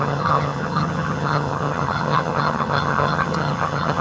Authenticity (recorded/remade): remade